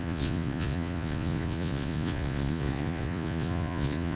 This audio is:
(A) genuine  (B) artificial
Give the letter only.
B